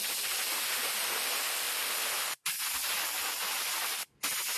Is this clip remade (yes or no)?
no